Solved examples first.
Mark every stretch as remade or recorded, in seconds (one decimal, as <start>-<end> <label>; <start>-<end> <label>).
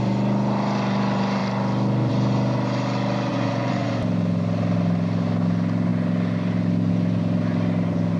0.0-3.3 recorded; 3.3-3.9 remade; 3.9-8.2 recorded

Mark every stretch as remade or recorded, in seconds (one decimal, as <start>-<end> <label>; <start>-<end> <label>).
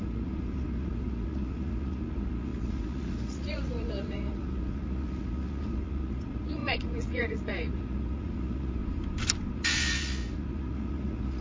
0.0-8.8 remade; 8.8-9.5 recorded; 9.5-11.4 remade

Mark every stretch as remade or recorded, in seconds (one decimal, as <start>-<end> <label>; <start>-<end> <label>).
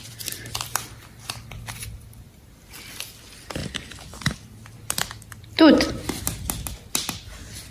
0.0-7.7 recorded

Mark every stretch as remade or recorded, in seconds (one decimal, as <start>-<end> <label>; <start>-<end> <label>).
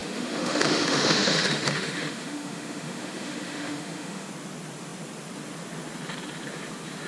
0.0-4.3 remade; 4.3-7.1 recorded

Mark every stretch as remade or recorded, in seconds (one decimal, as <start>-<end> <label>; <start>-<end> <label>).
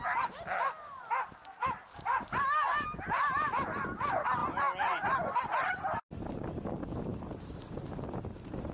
0.0-8.7 recorded